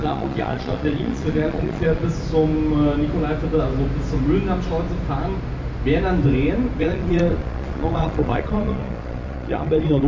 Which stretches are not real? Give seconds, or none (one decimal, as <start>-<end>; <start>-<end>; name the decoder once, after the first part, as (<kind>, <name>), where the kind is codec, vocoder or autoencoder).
0.0-2.0 (vocoder, Vocos); 6.8-10.1